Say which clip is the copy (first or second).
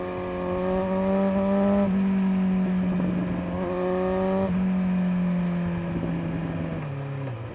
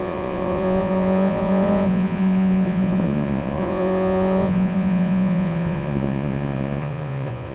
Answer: second